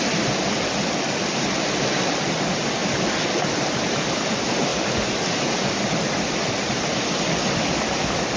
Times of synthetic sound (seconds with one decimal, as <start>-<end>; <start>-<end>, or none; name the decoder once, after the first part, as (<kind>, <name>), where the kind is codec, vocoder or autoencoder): 0.0-2.8 (vocoder, BigVGAN v2); 4.1-4.7; 5.5-8.4